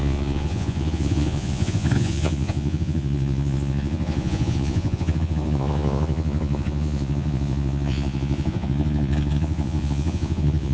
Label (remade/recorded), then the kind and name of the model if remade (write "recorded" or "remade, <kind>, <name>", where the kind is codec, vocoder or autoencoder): remade, vocoder, Vocos